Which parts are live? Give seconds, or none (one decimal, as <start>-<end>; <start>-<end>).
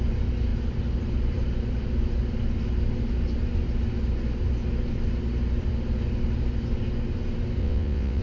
0.0-7.6